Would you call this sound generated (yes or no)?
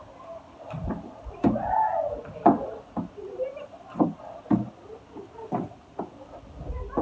no